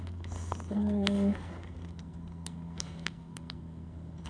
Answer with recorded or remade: remade